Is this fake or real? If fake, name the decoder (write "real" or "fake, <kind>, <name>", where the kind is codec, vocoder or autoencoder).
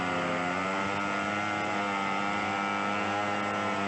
real